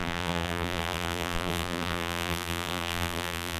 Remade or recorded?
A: remade